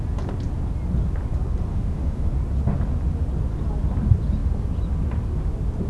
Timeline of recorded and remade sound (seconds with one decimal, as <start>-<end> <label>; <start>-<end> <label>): 0.0-1.7 recorded; 1.7-2.3 remade; 2.3-5.9 recorded